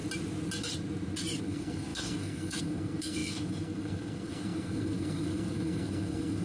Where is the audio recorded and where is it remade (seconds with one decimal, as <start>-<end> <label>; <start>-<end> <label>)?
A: 0.0-1.4 recorded; 1.4-6.4 remade